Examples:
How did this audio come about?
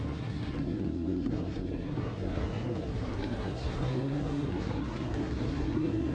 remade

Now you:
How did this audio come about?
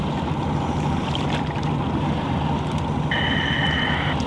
recorded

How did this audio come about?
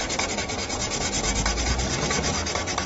recorded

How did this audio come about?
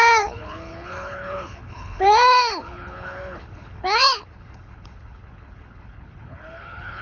remade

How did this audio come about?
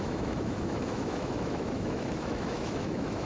remade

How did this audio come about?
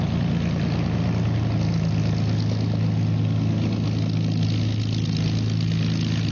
recorded